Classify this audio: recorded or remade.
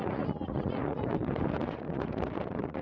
remade